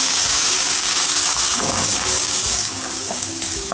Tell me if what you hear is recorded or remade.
remade